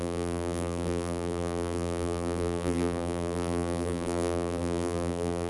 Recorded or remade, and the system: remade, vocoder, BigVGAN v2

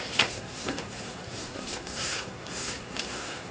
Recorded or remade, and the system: remade, codec, SNAC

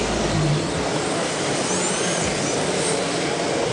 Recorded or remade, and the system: recorded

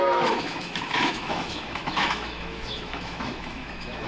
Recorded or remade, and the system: remade, autoencoder, DAC-VAE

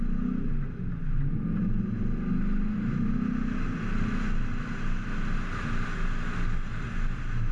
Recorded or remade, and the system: recorded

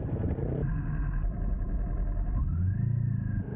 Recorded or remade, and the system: recorded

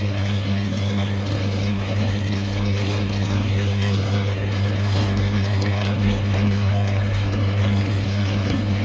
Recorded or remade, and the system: remade, codec, SNAC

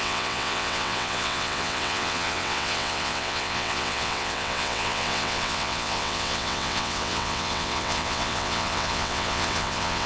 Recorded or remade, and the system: remade, vocoder, WaveNeXt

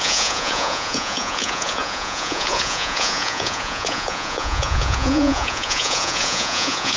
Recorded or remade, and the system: remade, vocoder, Vocos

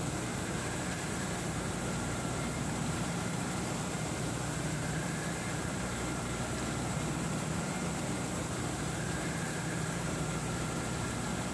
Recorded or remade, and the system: remade, vocoder, BigVGAN v2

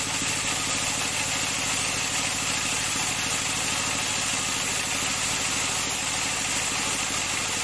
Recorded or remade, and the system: recorded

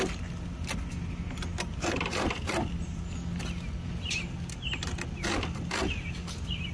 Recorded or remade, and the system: recorded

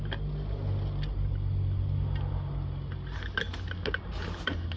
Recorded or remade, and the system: recorded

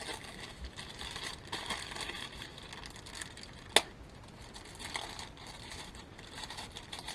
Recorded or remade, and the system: recorded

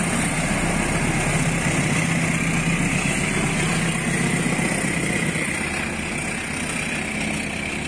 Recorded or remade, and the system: recorded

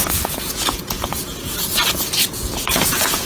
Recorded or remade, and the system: remade, vocoder, Vocos